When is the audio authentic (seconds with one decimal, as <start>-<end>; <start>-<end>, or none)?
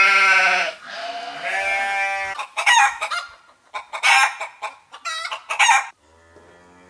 0.0-2.4; 3.1-6.9